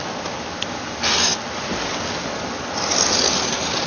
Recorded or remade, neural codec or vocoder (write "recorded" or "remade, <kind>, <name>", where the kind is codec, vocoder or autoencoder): recorded